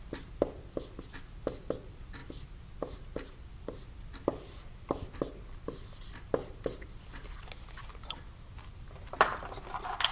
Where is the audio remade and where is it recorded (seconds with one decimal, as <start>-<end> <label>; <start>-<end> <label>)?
0.0-10.1 recorded